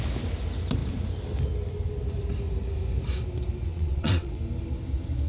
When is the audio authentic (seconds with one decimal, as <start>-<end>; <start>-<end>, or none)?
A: 0.0-3.7; 4.4-5.3